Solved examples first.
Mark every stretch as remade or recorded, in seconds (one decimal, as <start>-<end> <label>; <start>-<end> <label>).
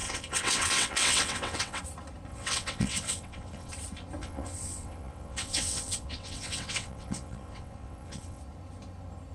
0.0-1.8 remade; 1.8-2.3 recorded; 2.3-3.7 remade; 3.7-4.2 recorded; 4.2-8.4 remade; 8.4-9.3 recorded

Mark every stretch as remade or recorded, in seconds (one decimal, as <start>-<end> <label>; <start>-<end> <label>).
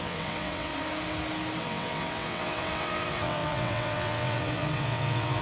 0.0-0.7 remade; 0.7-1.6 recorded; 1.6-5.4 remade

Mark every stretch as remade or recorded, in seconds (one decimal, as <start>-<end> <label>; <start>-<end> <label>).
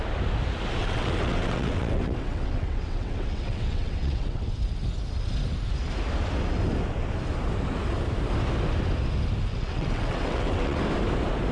0.0-0.8 recorded; 0.8-4.5 remade; 4.5-9.5 recorded; 9.5-10.8 remade; 10.8-11.5 recorded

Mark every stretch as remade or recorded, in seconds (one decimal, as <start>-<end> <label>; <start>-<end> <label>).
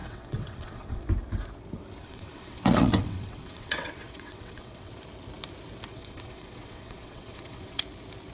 0.0-1.0 remade; 1.0-2.0 recorded; 2.0-4.9 remade; 4.9-5.9 recorded; 5.9-7.8 remade; 7.8-8.3 recorded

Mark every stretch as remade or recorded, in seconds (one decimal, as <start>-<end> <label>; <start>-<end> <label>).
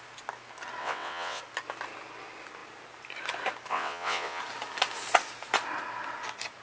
0.0-0.8 recorded; 0.8-1.4 remade; 1.4-3.7 recorded; 3.7-4.4 remade; 4.4-6.6 recorded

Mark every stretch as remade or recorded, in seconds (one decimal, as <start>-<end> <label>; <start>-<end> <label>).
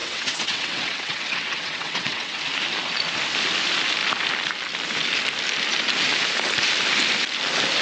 0.0-2.4 remade; 2.4-7.8 recorded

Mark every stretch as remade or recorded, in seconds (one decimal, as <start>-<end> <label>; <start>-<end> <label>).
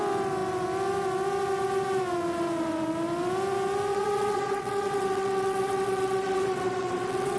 0.0-3.9 recorded; 3.9-7.4 remade